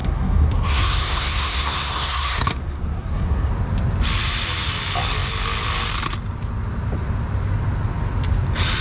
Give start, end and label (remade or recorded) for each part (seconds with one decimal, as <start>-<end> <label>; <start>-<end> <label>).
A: 0.0-3.5 remade; 3.5-8.8 recorded